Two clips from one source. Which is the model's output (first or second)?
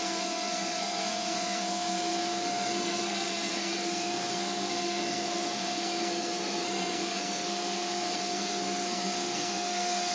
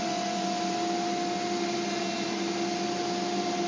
first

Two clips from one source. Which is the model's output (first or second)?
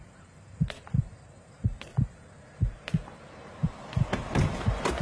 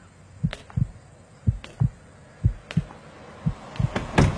first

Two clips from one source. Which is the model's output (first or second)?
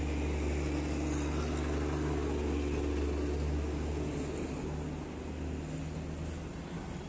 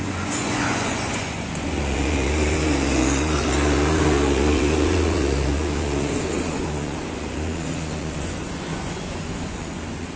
second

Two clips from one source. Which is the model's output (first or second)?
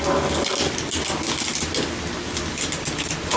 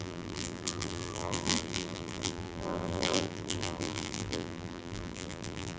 second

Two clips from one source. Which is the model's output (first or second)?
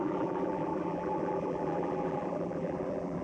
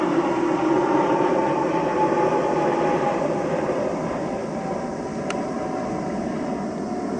first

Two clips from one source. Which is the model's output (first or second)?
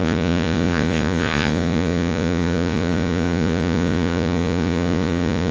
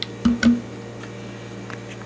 first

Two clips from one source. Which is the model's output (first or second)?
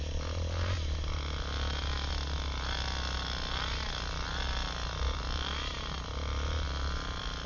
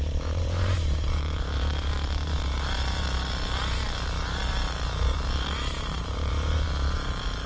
second